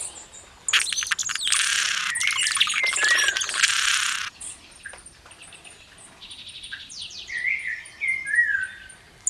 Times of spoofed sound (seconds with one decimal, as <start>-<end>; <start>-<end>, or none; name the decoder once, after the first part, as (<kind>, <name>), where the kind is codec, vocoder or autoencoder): none